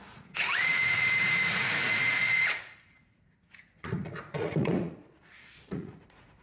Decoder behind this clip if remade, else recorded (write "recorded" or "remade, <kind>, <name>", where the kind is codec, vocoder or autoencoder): remade, vocoder, Vocos